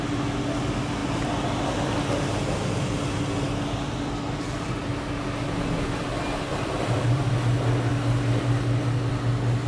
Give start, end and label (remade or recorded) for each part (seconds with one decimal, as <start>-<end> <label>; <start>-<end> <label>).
0.0-6.5 recorded; 6.5-7.3 remade; 7.3-9.7 recorded